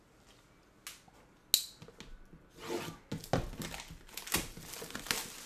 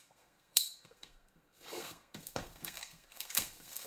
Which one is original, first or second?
first